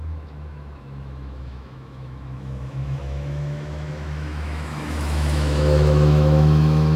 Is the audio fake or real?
fake